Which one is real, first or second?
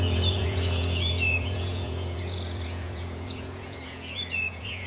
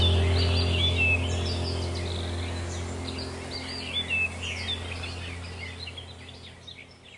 second